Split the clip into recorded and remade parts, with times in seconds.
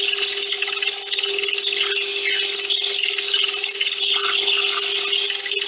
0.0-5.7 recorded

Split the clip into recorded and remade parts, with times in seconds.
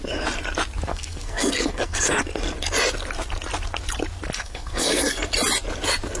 0.0-0.9 recorded; 0.9-2.2 remade; 2.2-4.4 recorded; 4.4-5.3 remade; 5.3-6.2 recorded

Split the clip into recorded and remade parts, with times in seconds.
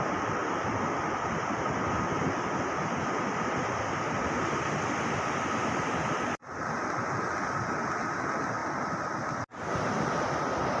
0.0-10.8 recorded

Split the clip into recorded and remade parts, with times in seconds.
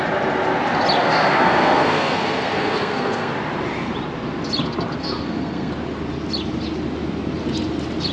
0.0-1.0 recorded; 1.0-3.3 remade; 3.3-5.0 recorded; 5.0-5.7 remade; 5.7-8.1 recorded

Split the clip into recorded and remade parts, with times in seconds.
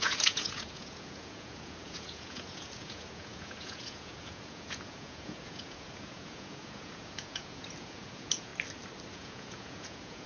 0.0-8.5 remade; 8.5-9.1 recorded; 9.1-10.3 remade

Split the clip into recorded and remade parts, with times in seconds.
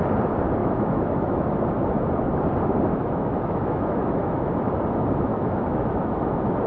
0.0-0.6 recorded; 0.6-1.5 remade; 1.5-2.9 recorded; 2.9-4.7 remade; 4.7-5.3 recorded; 5.3-6.7 remade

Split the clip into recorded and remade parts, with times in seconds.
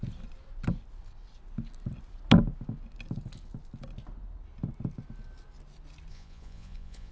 0.0-6.1 recorded; 6.1-7.1 remade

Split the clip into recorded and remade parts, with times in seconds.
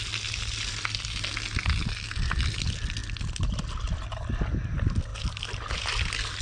0.0-6.4 recorded